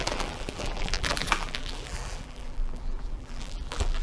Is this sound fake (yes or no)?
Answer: yes